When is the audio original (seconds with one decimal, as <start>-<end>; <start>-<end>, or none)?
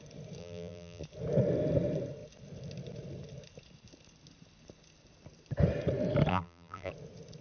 0.0-0.4; 1.0-6.3; 6.9-7.4